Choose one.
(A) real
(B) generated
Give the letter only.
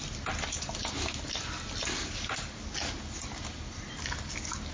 A